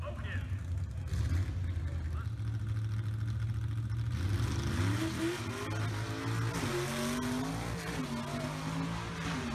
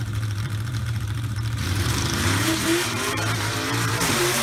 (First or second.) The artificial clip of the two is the second